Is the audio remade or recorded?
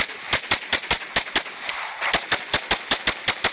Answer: recorded